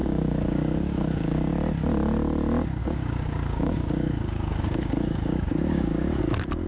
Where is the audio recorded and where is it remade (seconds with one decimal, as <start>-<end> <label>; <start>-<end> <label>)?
0.0-1.5 remade; 1.5-2.8 recorded; 2.8-6.2 remade; 6.2-6.7 recorded